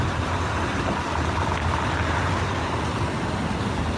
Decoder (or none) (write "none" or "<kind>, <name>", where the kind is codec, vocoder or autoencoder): none